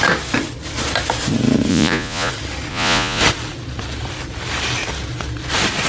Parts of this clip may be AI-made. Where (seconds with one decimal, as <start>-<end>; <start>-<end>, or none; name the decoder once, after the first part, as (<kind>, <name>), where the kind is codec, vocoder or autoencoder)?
1.7-2.3 (vocoder, Vocos); 2.7-3.2